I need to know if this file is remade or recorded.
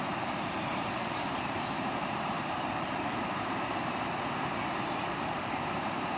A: remade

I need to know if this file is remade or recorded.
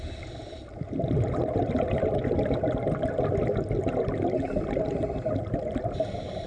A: recorded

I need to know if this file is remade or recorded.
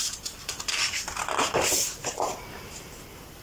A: recorded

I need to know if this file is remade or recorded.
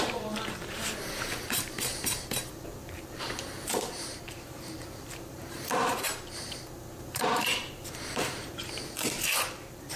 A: remade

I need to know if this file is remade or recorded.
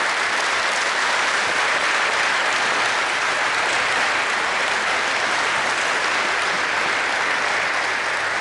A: recorded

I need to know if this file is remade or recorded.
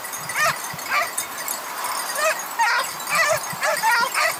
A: recorded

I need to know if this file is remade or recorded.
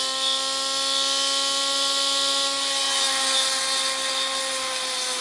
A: recorded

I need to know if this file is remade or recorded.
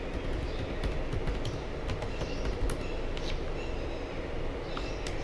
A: recorded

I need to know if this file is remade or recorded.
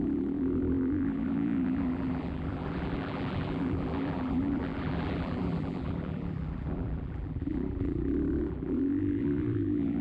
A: remade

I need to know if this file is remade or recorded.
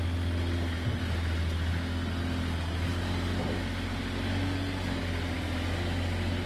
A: recorded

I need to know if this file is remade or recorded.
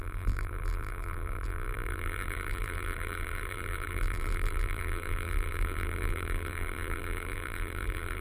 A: remade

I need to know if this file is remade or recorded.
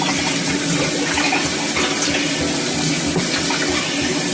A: recorded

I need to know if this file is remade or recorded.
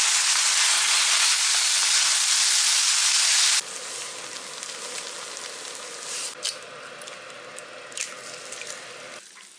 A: recorded